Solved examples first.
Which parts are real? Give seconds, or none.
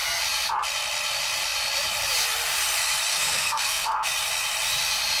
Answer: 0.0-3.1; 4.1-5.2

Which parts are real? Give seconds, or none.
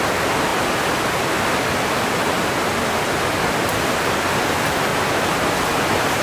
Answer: 0.0-4.9; 5.5-6.2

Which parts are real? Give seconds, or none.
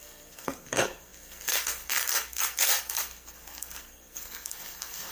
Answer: none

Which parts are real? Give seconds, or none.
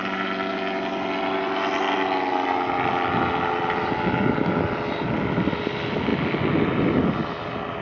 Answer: 0.0-7.8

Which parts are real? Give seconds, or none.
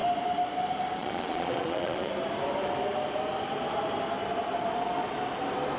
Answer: 0.0-1.0; 2.1-5.8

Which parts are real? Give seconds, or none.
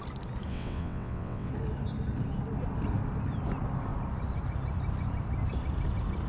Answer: 0.0-0.5; 1.5-6.3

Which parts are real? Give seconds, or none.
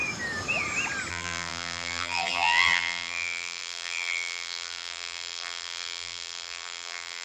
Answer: 0.0-1.1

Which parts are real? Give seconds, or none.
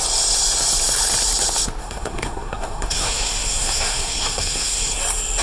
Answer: 0.0-1.8; 5.0-5.4